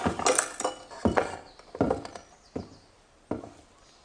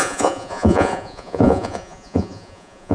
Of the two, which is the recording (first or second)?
first